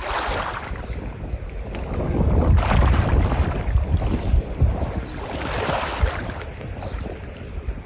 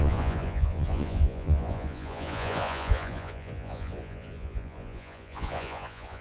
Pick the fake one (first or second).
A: second